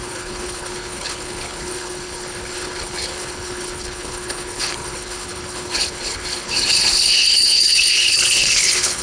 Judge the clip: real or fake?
fake